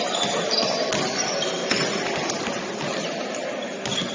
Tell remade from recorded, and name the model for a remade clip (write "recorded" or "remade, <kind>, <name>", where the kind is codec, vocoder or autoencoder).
recorded